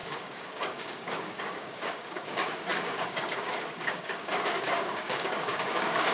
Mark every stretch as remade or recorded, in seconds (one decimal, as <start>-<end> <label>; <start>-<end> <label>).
0.0-6.1 remade